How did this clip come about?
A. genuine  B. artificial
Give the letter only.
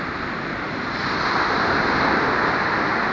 A